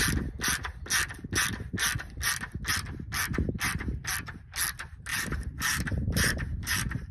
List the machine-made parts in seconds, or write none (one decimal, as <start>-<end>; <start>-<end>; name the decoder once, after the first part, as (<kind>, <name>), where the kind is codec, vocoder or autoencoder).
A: 5.1-7.1 (vocoder, BigVGAN v2)